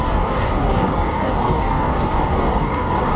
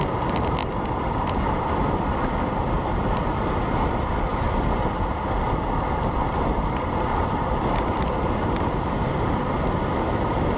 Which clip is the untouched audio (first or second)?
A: second